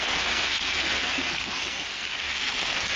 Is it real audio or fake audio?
fake